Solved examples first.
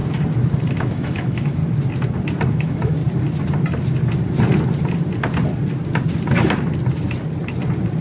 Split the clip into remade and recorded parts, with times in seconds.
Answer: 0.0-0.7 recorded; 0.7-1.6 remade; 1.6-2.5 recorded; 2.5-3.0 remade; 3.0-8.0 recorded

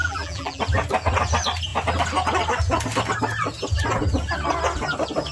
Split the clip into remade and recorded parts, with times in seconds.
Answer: 0.0-0.6 remade; 0.6-5.3 recorded

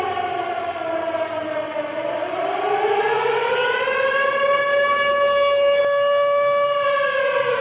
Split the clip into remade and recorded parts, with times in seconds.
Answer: 0.0-4.7 recorded; 4.7-5.8 remade; 5.8-7.6 recorded